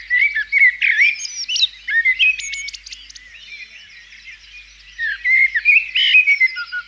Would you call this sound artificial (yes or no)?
no